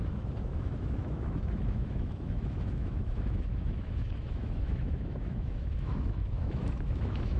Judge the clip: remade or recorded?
remade